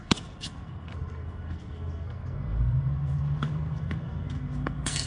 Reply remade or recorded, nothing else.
remade